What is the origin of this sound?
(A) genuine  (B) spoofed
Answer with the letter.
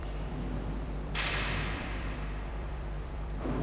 B